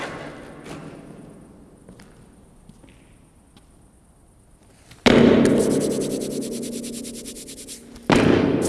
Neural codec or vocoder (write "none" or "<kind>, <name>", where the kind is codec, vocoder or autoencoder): none